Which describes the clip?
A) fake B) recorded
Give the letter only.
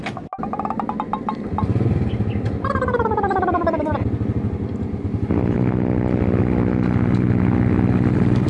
B